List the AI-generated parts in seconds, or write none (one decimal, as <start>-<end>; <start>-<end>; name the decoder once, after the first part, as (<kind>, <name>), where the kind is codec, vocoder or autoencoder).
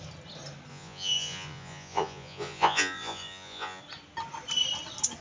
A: 0.7-3.8 (vocoder, Vocos)